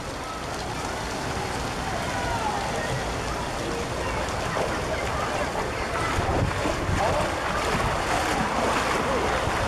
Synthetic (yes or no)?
no